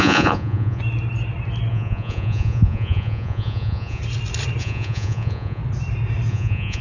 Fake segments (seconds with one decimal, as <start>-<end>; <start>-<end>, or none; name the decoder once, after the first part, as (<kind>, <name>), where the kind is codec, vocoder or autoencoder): 0.0-0.8 (vocoder, Vocos); 1.7-4.0; 4.6-5.6; 6.3-6.8